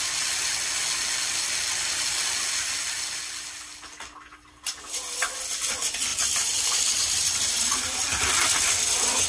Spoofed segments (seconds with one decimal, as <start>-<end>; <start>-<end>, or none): 6.1-8.8